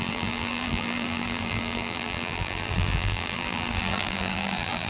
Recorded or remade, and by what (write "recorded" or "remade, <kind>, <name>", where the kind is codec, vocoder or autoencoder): remade, vocoder, BigVGAN v2